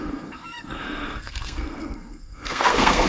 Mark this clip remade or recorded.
remade